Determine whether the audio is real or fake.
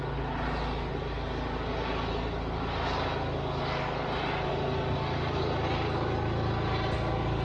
real